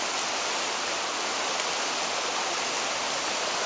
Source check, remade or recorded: recorded